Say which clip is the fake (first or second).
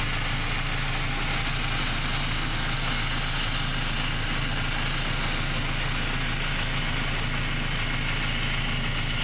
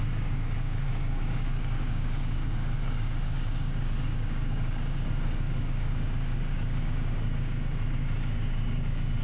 second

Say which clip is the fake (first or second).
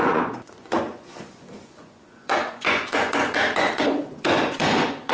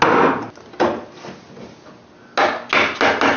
first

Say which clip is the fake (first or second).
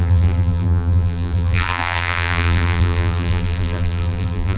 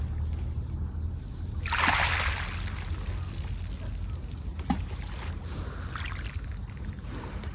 first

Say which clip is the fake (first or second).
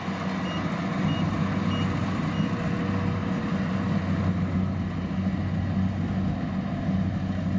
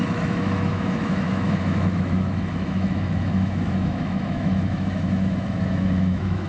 second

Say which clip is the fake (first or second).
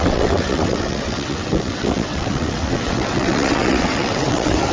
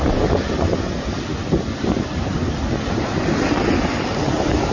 first